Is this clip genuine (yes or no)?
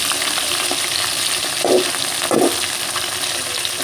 yes